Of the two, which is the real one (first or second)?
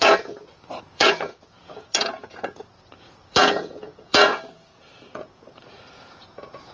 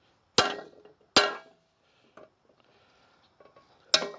second